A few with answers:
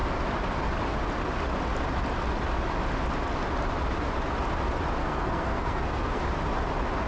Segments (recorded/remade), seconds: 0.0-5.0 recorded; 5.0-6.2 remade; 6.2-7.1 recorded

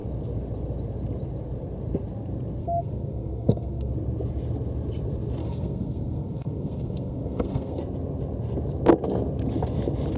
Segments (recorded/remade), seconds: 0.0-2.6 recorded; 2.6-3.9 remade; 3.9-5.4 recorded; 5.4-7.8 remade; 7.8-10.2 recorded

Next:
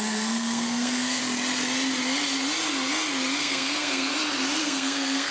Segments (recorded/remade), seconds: 0.0-1.2 remade; 1.2-3.4 recorded; 3.4-4.1 remade; 4.1-4.6 recorded; 4.6-5.3 remade

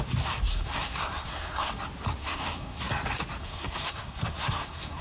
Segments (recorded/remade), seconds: 0.0-0.5 recorded; 0.5-1.7 remade; 1.7-2.2 recorded; 2.2-2.8 remade; 2.8-3.4 recorded; 3.4-5.0 remade

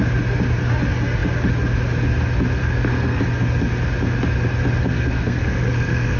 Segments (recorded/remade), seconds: 0.0-2.6 recorded; 2.6-3.2 remade; 3.2-4.8 recorded; 4.8-6.2 remade

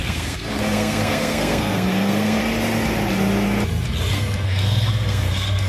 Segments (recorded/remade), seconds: 0.0-2.4 remade; 2.4-4.1 recorded; 4.1-5.7 remade